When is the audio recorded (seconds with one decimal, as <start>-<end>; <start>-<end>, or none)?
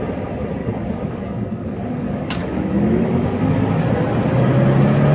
0.0-0.6; 3.7-5.1